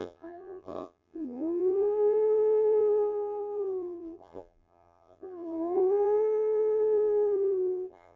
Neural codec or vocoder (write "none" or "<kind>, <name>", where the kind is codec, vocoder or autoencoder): vocoder, BigVGAN v2